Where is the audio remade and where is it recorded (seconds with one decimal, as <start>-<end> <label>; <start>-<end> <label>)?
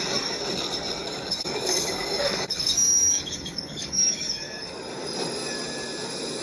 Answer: 0.0-1.0 recorded; 1.0-4.8 remade; 4.8-6.4 recorded